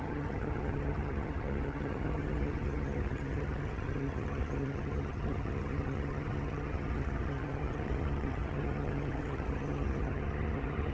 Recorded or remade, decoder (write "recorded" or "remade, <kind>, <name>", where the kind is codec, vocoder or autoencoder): remade, vocoder, HiFi-GAN